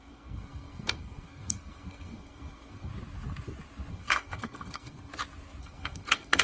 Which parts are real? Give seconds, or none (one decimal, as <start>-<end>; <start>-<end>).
2.9-3.9; 5.1-5.6